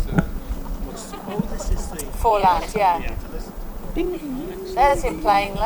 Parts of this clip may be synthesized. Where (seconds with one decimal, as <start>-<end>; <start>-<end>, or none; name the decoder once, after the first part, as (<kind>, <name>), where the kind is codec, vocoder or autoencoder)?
none